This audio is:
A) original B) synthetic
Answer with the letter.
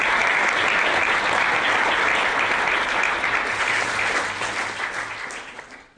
A